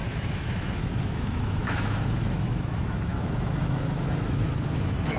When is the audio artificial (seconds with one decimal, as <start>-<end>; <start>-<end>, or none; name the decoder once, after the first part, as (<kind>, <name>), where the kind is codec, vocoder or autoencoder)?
0.0-5.2 (autoencoder, DAC-VAE)